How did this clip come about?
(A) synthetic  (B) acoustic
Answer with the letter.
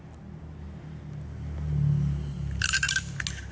B